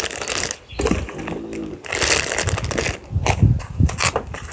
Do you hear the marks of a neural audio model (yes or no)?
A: no